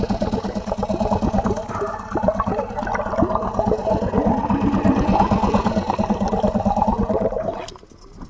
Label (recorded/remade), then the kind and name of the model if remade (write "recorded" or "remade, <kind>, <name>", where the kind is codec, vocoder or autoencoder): recorded